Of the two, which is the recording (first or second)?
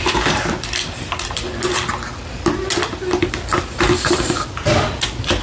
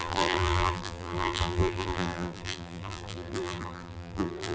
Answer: first